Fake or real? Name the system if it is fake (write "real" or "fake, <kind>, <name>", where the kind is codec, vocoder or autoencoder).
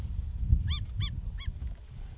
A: real